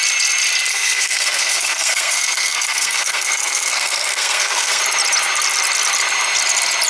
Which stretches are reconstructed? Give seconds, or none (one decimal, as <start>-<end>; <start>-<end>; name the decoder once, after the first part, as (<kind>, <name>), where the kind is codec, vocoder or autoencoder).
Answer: 0.7-4.8 (codec, SNAC)